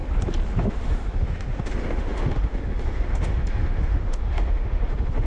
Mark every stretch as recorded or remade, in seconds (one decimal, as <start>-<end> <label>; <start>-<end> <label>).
0.0-0.6 recorded; 0.6-5.3 remade